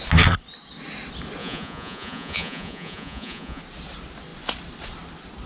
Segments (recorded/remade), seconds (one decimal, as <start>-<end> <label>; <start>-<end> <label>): 0.0-1.4 recorded; 1.4-3.6 remade; 3.6-5.5 recorded